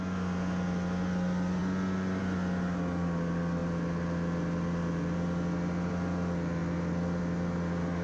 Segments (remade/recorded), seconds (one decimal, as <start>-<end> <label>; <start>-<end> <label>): 0.0-8.0 recorded